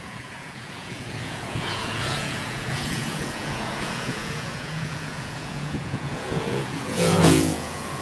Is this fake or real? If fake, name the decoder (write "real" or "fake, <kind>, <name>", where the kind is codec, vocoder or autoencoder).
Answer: fake, vocoder, Vocos